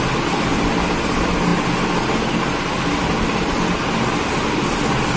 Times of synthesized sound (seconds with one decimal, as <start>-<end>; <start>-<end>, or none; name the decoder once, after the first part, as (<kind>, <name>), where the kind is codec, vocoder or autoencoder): none